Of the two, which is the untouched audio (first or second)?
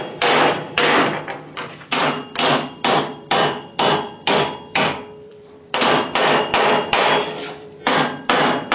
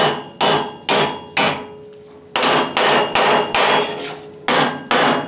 second